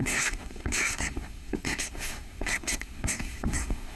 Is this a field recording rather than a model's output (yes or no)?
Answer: no